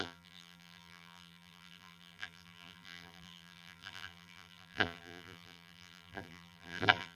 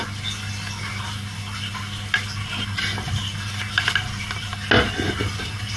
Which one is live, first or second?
second